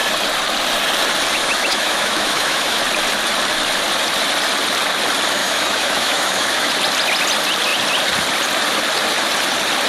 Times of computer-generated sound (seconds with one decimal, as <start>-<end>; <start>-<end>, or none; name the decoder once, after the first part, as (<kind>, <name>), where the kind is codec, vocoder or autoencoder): 1.4-2.8 (autoencoder, DAC-VAE); 5.4-6.7